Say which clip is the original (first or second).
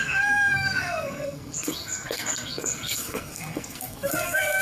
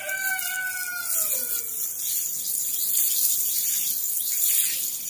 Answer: second